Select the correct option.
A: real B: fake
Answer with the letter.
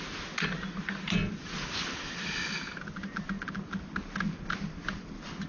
A